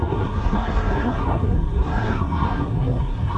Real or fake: fake